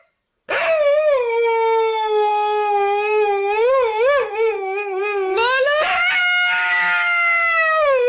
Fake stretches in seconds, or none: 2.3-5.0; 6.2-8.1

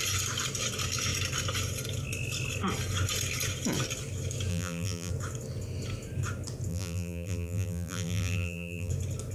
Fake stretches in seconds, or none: 4.5-5.1; 6.7-8.9

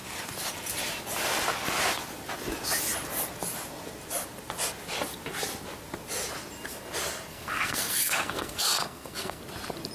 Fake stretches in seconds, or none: 7.3-9.4

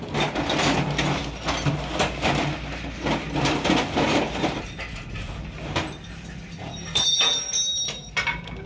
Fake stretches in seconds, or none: none

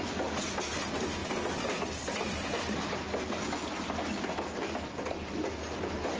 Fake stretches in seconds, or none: none

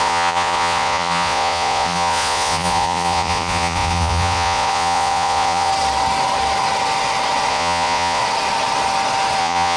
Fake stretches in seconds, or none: 0.0-5.7; 7.5-8.2; 9.4-9.8